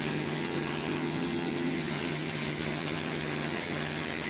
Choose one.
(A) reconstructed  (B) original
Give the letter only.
A